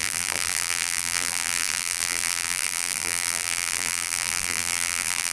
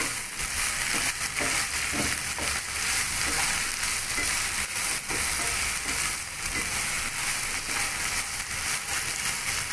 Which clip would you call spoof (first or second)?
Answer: first